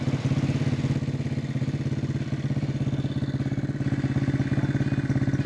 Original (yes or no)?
yes